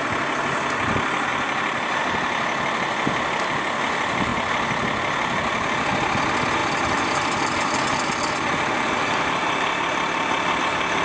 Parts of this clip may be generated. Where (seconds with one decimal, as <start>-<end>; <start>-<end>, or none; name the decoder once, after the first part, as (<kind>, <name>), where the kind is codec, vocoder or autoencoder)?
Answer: 1.3-2.0 (vocoder, BigVGAN v2); 6.6-10.6